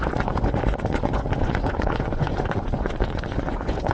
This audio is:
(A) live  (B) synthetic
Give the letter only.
B